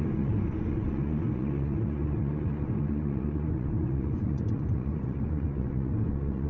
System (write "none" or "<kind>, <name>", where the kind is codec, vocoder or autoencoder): vocoder, Vocos